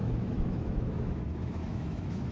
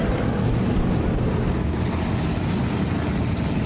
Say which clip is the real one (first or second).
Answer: second